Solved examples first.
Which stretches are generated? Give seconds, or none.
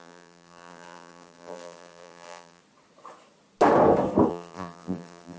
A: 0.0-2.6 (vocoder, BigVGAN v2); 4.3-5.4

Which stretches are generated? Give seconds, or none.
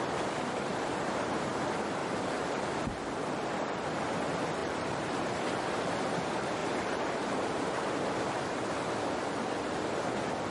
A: 0.7-1.5 (vocoder, BigVGAN v2); 2.0-2.8; 4.6-5.3; 6.6-8.0